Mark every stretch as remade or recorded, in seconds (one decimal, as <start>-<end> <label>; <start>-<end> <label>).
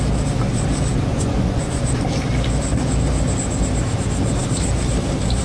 0.0-1.1 recorded; 1.1-1.9 remade; 1.9-5.4 recorded